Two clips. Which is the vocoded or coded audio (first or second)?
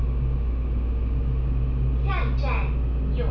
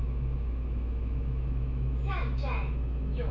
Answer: second